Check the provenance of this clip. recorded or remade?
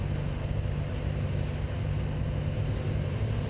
recorded